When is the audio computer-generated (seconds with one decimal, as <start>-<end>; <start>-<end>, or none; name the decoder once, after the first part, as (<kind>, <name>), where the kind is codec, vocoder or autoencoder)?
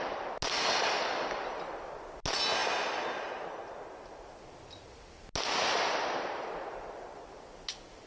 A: none